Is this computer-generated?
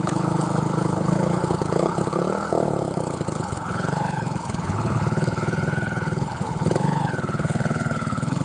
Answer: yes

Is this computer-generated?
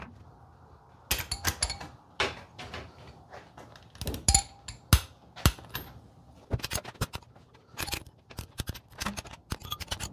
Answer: no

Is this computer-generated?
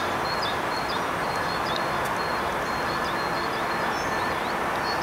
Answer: no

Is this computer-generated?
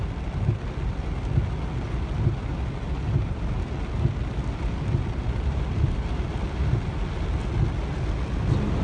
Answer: no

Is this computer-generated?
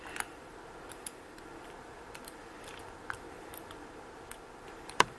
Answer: yes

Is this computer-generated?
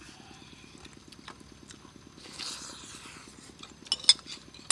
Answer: no